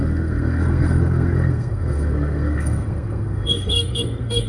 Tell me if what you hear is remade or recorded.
remade